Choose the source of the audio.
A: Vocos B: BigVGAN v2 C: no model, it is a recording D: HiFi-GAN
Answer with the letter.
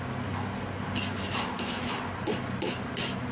C